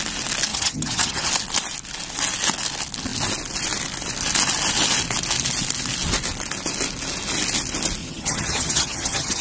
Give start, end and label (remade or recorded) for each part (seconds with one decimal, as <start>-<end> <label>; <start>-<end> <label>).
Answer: 0.0-0.5 recorded; 0.5-1.3 remade; 1.3-8.0 recorded; 8.0-9.4 remade